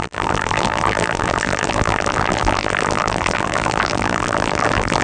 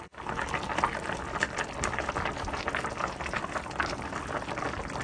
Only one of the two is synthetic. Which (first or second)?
first